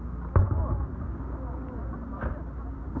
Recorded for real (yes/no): yes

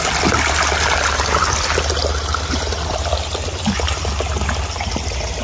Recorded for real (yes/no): yes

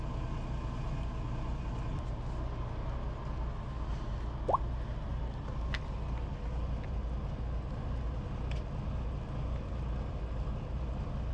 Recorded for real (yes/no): yes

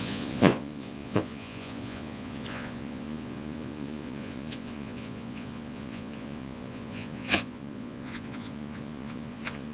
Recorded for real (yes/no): no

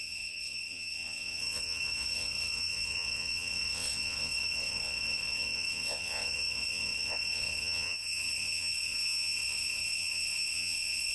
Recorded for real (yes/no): no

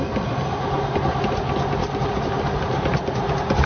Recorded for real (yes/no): yes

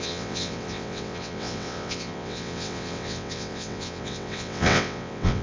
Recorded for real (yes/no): no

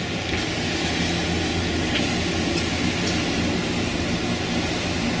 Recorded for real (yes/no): yes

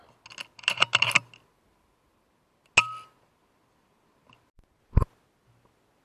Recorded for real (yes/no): yes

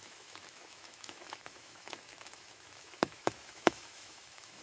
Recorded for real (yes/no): no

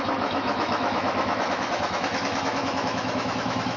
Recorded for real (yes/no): no